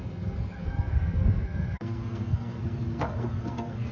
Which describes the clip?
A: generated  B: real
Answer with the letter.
A